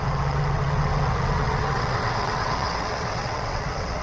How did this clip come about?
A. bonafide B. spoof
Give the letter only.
B